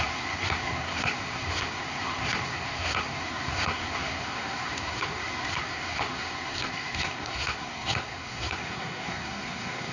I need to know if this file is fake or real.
fake